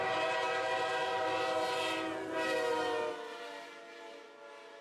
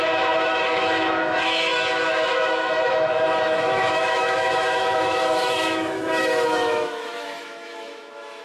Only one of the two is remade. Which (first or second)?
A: second